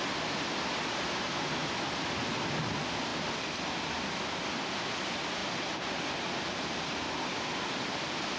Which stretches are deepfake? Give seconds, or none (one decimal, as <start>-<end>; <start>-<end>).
1.6-2.5; 3.1-4.4; 5.4-8.4